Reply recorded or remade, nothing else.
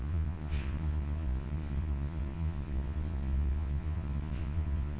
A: remade